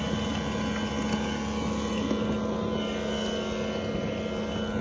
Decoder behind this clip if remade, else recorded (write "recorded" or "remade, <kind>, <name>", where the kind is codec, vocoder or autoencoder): recorded